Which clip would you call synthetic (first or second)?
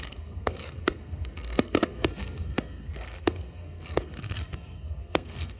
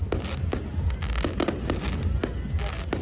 first